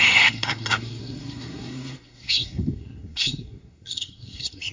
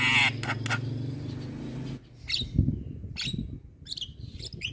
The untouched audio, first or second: second